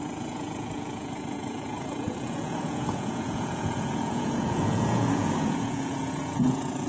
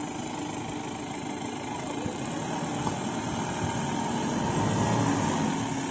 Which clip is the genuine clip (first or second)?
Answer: second